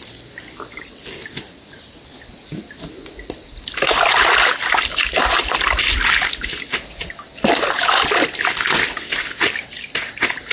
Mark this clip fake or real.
real